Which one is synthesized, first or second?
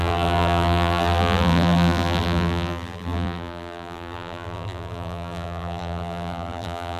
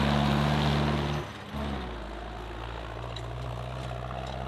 first